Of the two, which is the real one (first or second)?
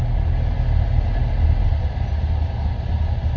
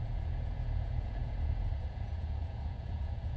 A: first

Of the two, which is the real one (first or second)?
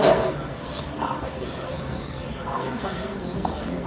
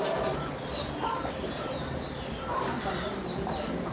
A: second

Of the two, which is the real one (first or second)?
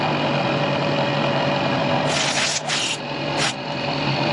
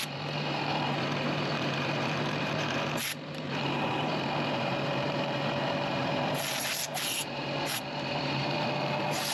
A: first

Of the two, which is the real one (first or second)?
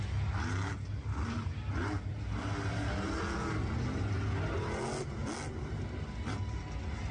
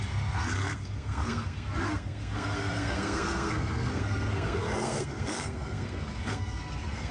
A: first